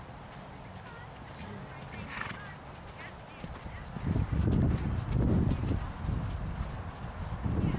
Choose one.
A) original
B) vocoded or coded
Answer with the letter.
A